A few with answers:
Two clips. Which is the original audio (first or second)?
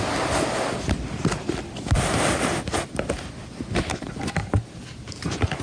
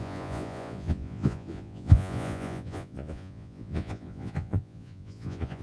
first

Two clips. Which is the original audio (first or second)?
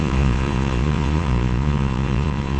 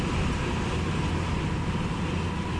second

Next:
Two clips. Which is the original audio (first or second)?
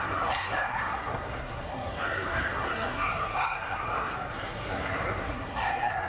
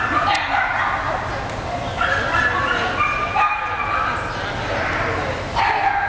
second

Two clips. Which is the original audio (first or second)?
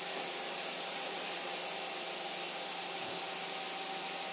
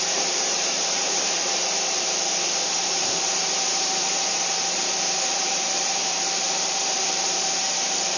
first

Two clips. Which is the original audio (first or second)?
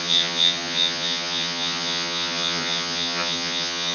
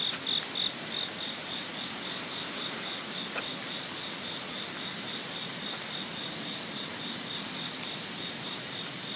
second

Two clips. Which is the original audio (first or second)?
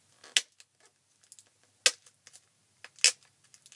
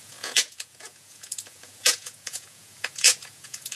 first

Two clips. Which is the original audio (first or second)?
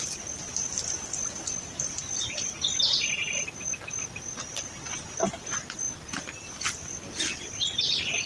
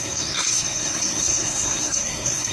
first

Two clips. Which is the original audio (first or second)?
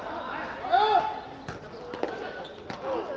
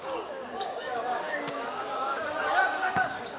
first